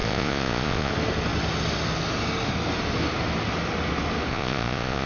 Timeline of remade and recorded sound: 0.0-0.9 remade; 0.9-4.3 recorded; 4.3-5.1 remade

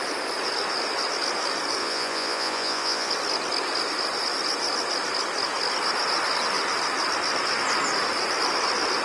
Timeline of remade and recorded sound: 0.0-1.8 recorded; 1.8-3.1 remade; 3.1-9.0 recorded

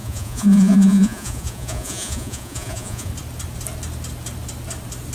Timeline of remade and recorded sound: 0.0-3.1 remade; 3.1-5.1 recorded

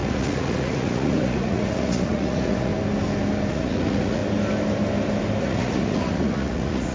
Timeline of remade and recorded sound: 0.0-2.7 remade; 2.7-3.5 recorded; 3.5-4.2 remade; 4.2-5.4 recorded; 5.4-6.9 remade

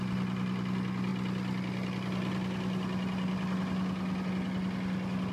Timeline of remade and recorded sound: 0.0-5.3 recorded

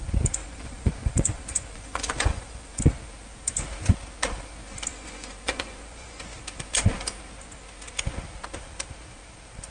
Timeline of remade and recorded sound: 0.0-0.4 recorded; 0.4-2.8 remade; 2.8-4.9 recorded; 4.9-6.2 remade; 6.2-9.7 recorded

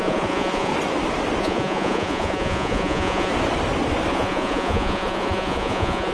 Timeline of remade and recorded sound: 0.0-0.7 remade; 0.7-1.4 recorded; 1.4-3.3 remade; 3.3-4.1 recorded; 4.1-6.1 remade

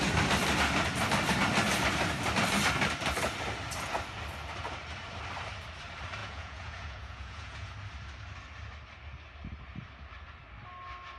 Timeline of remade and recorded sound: 0.0-6.2 recorded; 6.2-7.7 remade; 7.7-11.2 recorded